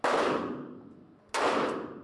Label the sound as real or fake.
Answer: real